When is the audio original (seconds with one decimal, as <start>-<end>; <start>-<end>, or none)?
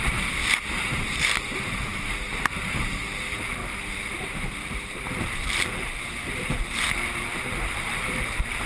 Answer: 0.4-0.9